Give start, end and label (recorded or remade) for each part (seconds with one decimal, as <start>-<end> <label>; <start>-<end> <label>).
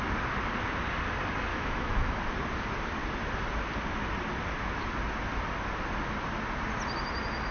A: 0.0-1.5 recorded; 1.5-2.2 remade; 2.2-7.5 recorded